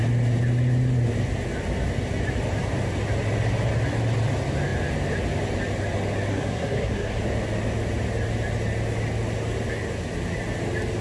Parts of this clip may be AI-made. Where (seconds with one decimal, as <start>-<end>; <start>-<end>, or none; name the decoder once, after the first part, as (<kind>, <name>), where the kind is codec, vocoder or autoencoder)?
6.3-7.2 (codec, SNAC)